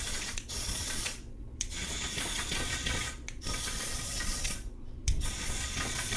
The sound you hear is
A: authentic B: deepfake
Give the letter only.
B